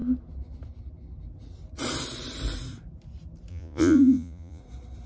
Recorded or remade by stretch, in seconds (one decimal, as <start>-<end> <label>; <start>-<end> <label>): 0.0-3.5 recorded; 3.5-4.6 remade; 4.6-5.1 recorded